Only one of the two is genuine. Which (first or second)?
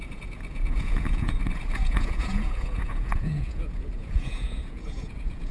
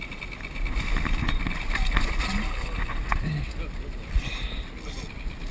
second